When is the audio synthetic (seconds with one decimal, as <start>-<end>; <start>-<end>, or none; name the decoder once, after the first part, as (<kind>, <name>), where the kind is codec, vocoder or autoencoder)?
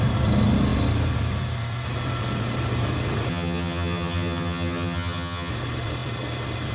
3.3-5.5 (vocoder, HiFi-GAN)